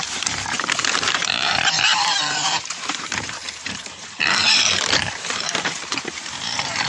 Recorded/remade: remade